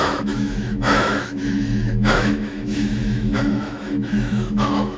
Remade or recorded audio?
remade